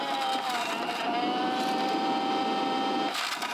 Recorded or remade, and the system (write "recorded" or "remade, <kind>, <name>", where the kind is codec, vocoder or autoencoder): recorded